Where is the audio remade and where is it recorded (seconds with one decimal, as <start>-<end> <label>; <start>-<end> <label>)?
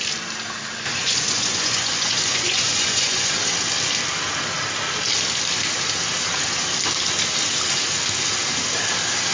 0.0-1.0 recorded; 1.0-3.3 remade; 3.3-9.3 recorded